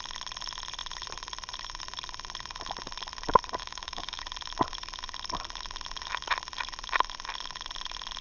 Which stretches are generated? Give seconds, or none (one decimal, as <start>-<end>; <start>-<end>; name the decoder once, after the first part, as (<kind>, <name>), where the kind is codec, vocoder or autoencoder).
3.6-4.2 (codec, DAC)